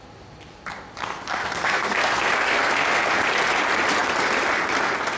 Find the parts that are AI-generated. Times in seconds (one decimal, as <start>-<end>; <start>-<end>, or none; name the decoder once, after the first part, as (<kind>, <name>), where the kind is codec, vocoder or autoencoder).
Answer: 1.0-3.1 (codec, SNAC)